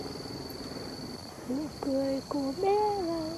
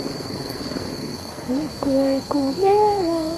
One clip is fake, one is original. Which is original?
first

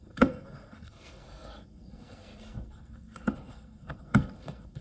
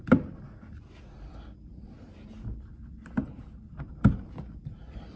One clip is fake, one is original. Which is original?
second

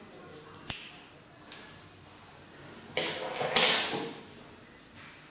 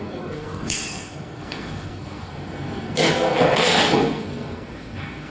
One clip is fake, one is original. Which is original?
first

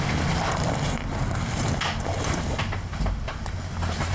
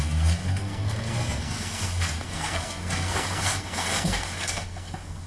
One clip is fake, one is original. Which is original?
first